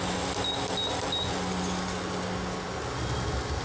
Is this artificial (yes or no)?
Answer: no